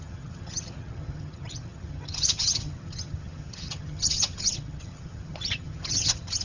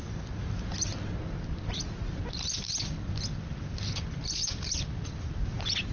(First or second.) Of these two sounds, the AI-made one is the first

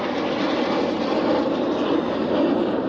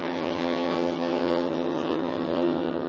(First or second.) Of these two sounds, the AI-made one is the second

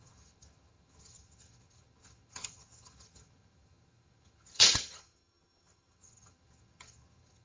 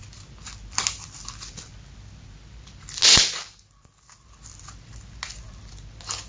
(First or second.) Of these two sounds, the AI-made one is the first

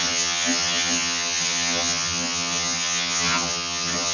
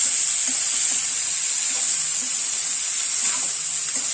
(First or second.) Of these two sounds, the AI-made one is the first